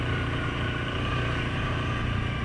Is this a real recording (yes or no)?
no